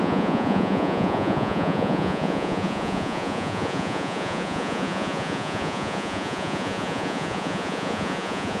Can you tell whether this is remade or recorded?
remade